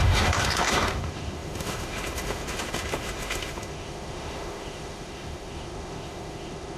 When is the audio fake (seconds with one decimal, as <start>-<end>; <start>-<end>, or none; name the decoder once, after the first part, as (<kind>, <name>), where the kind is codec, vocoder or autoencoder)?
0.0-6.8 (autoencoder, DAC-VAE)